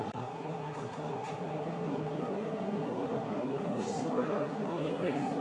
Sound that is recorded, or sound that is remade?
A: remade